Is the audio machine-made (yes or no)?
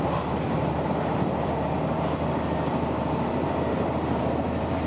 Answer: yes